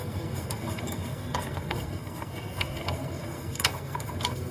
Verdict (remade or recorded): remade